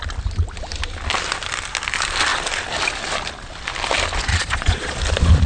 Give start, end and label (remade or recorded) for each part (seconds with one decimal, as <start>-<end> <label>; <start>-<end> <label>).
0.0-4.3 recorded; 4.3-5.0 remade; 5.0-5.5 recorded

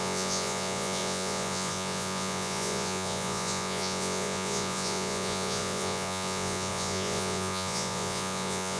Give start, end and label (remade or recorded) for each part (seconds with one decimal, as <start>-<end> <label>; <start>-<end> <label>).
0.0-8.8 remade

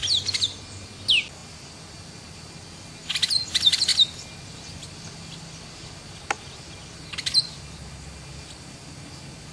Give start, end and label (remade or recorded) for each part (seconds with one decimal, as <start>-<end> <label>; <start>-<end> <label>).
0.0-9.5 recorded

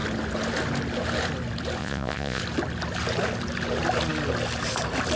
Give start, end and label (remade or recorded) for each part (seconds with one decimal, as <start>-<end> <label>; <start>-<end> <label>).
0.0-1.8 recorded; 1.8-2.4 remade; 2.4-5.2 recorded

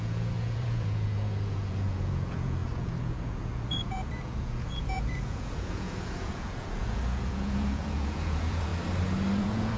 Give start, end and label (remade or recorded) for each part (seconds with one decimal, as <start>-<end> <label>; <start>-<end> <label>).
0.0-8.7 remade; 8.7-9.4 recorded; 9.4-9.8 remade